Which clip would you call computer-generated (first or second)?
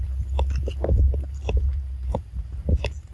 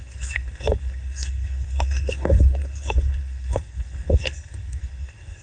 second